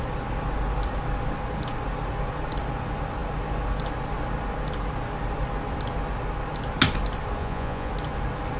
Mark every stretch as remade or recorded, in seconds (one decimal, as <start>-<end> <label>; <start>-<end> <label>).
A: 0.0-7.4 recorded; 7.4-7.9 remade; 7.9-8.6 recorded